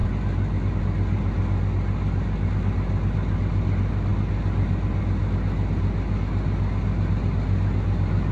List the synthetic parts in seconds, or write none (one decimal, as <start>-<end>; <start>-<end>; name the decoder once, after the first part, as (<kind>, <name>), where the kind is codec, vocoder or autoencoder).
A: none